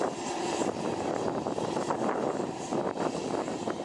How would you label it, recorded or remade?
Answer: recorded